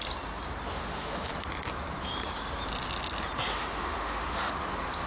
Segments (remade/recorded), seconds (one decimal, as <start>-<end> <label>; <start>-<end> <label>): 0.0-0.7 recorded; 0.7-1.3 remade; 1.3-3.5 recorded; 3.5-4.5 remade; 4.5-5.1 recorded